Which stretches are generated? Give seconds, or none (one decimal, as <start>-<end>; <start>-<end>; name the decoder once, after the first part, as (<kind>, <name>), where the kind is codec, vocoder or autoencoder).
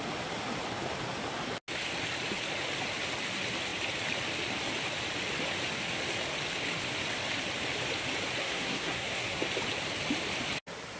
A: 8.4-9.5 (codec, SNAC)